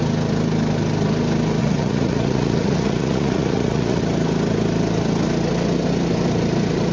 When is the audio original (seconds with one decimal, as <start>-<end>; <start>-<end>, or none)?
0.0-1.6; 4.0-6.9